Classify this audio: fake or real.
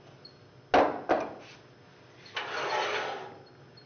real